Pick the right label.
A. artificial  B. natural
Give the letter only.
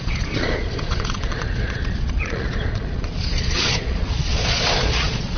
A